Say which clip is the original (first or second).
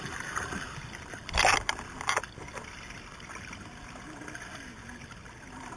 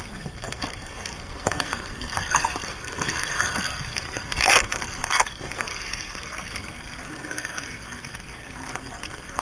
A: first